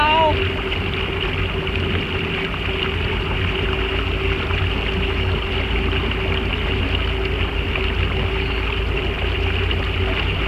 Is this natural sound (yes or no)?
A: yes